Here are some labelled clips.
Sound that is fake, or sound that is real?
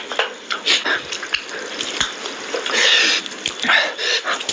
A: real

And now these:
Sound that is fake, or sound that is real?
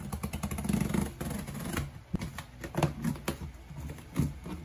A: real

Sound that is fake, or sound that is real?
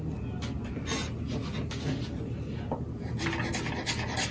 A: real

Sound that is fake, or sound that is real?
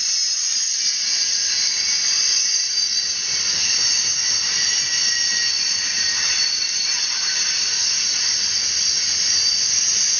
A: real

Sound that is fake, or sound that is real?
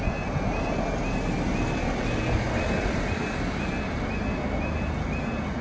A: real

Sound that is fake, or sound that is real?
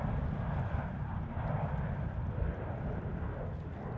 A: real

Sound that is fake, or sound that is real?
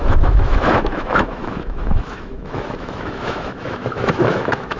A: fake